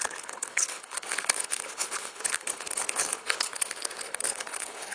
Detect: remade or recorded remade